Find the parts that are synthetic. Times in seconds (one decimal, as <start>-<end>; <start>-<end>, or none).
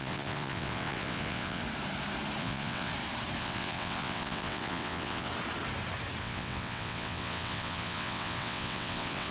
0.0-1.6; 2.4-2.9; 3.4-5.3; 6.2-9.3